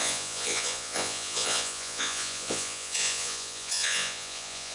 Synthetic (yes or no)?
yes